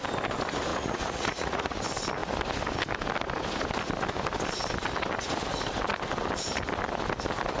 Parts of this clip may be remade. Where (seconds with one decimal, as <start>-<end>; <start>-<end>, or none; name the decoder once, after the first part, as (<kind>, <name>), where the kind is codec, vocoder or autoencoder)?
0.7-1.8 (vocoder, Vocos)